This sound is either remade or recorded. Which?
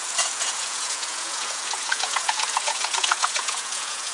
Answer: remade